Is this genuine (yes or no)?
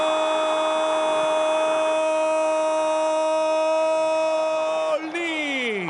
yes